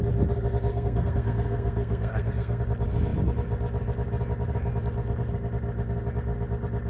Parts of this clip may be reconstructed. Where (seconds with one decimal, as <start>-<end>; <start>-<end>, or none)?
0.7-2.6